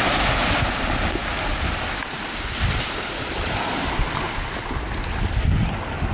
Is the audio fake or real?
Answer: real